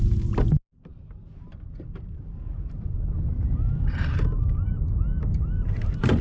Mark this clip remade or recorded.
remade